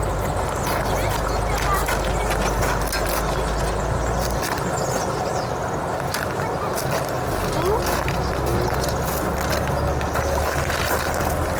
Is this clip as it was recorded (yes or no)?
yes